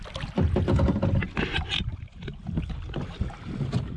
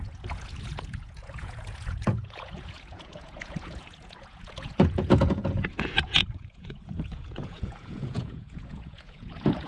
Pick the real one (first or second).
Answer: first